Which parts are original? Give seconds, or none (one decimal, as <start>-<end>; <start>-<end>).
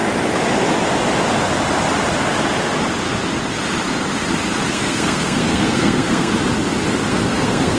0.0-4.7; 6.3-7.1